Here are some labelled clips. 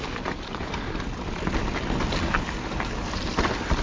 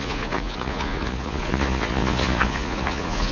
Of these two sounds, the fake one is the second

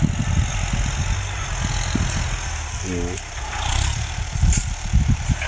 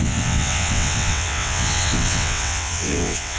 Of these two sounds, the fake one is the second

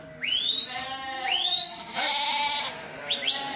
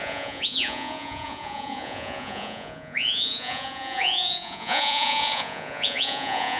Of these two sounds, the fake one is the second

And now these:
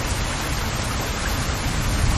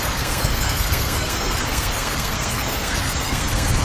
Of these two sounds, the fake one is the second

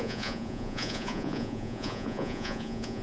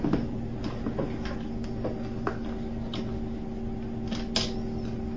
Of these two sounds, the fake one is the first